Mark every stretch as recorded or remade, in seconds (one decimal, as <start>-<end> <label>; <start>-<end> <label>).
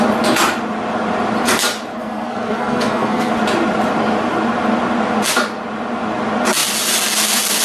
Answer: 0.0-1.9 recorded; 1.9-3.3 remade; 3.3-7.6 recorded